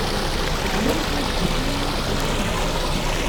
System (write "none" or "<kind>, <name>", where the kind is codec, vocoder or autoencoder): none